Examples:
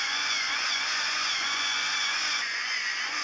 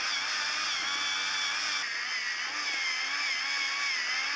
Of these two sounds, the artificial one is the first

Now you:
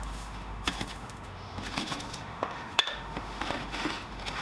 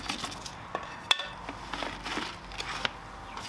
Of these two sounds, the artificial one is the first